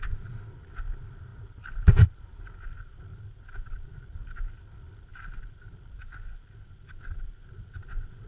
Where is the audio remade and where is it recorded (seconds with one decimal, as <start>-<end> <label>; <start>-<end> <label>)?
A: 0.0-8.3 recorded